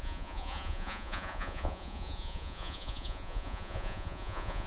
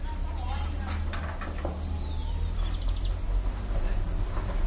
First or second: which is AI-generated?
first